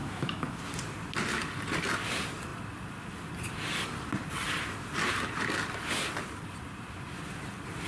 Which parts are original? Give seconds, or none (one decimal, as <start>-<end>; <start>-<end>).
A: 0.6-7.9